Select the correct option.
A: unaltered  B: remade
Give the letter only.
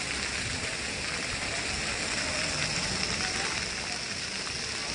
A